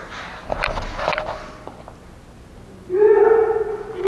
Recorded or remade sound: recorded